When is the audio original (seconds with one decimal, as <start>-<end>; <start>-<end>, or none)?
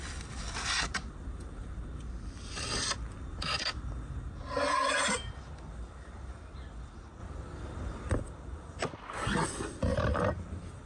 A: 0.0-10.9